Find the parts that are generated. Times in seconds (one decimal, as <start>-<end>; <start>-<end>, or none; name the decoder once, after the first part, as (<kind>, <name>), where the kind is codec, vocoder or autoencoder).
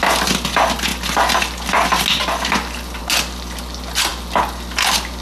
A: none